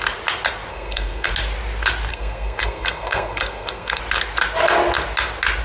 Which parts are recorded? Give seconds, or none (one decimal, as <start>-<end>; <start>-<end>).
0.0-0.7; 1.3-2.1; 4.0-5.6

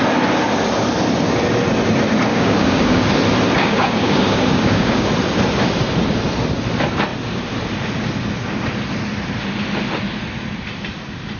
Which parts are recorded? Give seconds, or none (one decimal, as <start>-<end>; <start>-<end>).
0.0-2.3; 3.1-3.6; 5.1-11.4

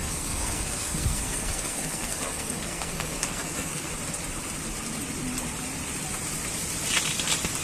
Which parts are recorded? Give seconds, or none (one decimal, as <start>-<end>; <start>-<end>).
3.9-7.6

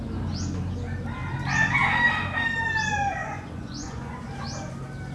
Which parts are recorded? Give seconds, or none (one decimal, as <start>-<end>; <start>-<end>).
0.0-3.2; 4.2-5.1

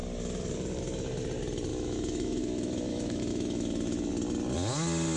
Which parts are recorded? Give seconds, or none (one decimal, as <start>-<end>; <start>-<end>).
0.0-1.7; 4.1-5.2

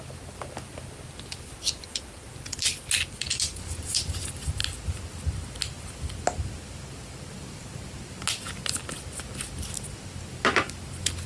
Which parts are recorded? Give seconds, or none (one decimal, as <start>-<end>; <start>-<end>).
0.0-11.3

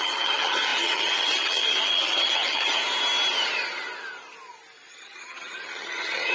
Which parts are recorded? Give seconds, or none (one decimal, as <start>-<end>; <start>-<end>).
2.8-4.9